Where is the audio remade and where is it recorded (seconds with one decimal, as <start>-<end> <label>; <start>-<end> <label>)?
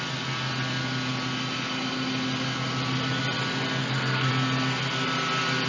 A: 0.0-3.8 recorded; 3.8-4.3 remade; 4.3-5.7 recorded